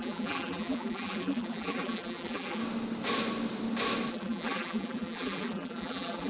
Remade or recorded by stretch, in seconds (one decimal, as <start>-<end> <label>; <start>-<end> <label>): 0.0-2.6 remade; 2.6-4.1 recorded; 4.1-6.3 remade